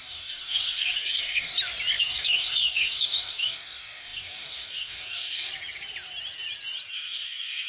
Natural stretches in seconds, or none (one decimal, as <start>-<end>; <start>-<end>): 1.5-2.0; 5.5-6.9